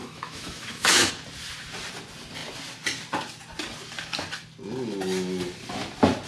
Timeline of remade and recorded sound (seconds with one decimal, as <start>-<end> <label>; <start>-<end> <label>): 0.0-1.1 remade; 1.1-6.3 recorded